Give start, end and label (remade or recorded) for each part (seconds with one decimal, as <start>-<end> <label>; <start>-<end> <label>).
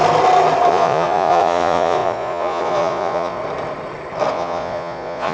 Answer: 0.0-0.7 recorded; 0.7-3.4 remade; 3.4-4.3 recorded; 4.3-5.3 remade